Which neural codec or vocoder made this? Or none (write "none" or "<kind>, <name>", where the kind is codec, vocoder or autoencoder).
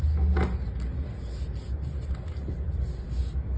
none